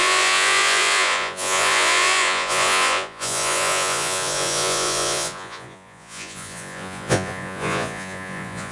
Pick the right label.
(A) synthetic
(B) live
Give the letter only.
A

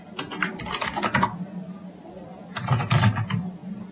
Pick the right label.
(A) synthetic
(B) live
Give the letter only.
B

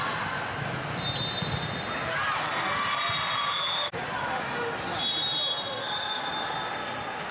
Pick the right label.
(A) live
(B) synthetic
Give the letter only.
A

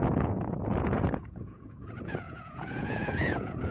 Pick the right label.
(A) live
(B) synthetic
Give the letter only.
B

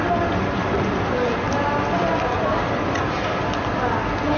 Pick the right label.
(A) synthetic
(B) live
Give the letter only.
B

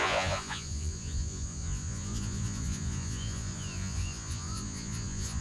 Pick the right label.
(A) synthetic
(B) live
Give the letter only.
A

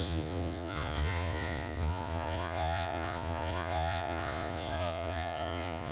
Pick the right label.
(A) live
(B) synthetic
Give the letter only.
B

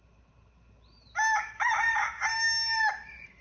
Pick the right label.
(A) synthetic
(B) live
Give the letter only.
B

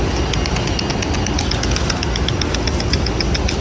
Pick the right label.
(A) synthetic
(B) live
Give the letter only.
B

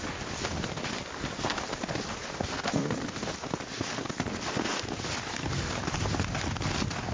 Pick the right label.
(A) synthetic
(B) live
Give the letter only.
B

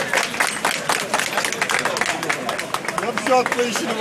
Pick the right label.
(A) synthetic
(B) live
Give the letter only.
B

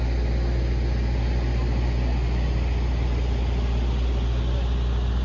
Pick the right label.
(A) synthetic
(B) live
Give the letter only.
B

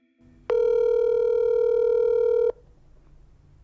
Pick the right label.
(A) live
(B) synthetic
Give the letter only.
A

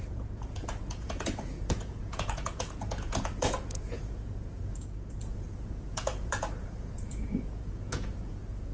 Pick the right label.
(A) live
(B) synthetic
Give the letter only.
B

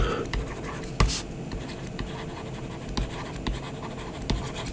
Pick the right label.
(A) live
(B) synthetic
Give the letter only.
A